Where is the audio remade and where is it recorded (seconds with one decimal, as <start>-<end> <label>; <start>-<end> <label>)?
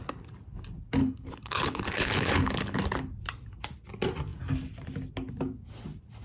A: 0.0-1.0 recorded; 1.0-2.8 remade; 2.8-6.2 recorded